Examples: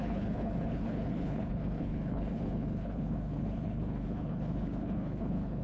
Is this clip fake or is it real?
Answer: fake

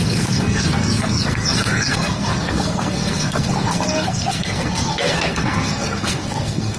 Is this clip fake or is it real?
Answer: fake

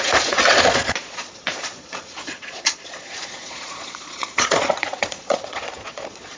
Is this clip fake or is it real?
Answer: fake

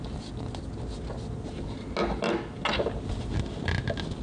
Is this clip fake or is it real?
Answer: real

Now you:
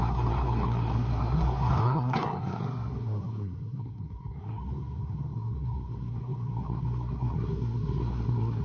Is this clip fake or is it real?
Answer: fake